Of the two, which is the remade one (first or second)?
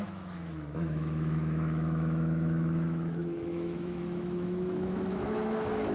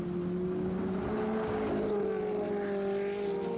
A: first